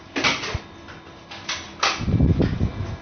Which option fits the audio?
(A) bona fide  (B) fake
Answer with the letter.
A